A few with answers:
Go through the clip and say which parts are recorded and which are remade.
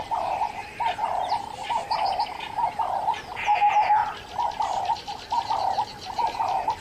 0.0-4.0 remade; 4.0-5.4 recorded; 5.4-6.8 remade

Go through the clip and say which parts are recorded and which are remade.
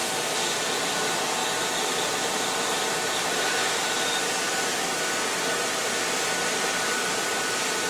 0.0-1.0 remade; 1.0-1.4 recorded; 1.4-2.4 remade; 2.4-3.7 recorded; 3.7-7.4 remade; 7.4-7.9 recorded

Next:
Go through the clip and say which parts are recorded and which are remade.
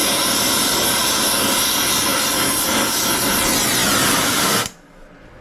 0.0-3.8 recorded; 3.8-4.4 remade; 4.4-5.4 recorded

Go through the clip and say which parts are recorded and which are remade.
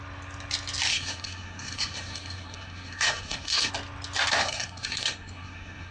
0.0-0.9 recorded; 0.9-3.7 remade; 3.7-4.4 recorded; 4.4-5.9 remade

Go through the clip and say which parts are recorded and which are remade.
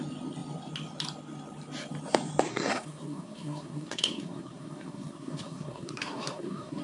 0.0-2.5 recorded; 2.5-6.8 remade